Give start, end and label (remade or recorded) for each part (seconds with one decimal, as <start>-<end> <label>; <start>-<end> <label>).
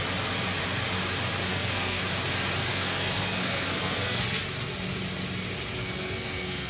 0.0-1.5 recorded; 1.5-2.0 remade; 2.0-2.7 recorded; 2.7-4.4 remade; 4.4-5.8 recorded; 5.8-6.7 remade